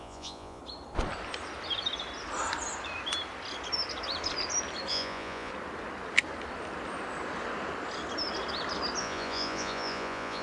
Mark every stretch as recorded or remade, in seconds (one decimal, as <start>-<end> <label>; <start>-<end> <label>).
0.0-0.6 remade; 0.6-4.9 recorded; 4.9-5.5 remade; 5.5-9.0 recorded; 9.0-10.4 remade